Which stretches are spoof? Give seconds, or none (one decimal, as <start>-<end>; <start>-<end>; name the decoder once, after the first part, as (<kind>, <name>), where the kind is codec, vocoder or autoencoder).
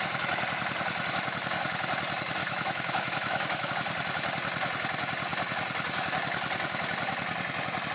2.4-3.7 (autoencoder, DAC-VAE)